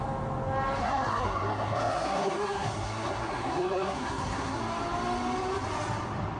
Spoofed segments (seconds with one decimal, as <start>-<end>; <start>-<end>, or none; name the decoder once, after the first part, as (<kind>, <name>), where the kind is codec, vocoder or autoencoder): 0.8-4.6 (codec, SNAC)